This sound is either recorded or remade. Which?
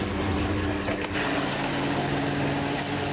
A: recorded